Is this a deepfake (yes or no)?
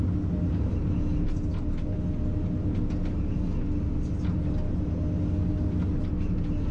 no